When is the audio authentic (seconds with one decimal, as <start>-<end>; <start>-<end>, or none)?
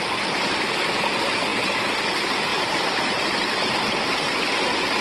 0.0-2.5; 3.2-5.0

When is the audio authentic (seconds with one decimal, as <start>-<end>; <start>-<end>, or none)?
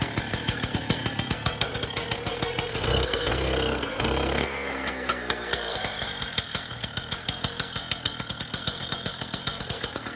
none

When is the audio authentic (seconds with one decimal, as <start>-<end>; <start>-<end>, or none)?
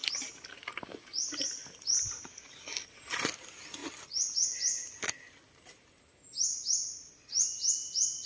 0.0-8.3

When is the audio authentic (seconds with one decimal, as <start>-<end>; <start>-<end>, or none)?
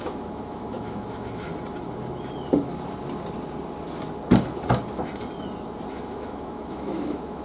1.5-5.9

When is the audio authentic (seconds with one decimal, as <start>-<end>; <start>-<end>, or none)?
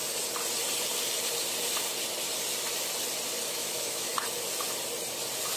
0.0-3.4; 4.1-5.6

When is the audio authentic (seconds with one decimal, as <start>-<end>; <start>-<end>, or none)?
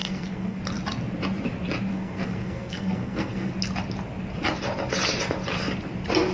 0.6-1.9; 3.5-6.3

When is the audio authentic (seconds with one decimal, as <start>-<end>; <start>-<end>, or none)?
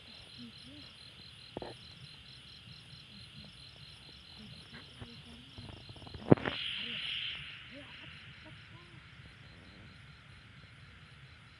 0.0-10.5